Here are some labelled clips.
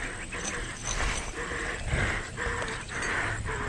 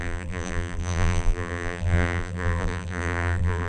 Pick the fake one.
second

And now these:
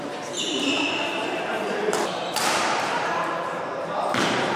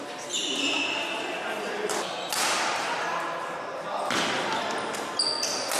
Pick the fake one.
first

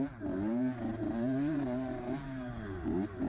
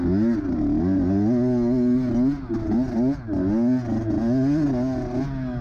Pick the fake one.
first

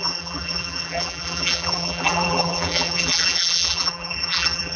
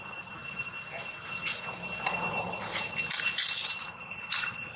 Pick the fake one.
first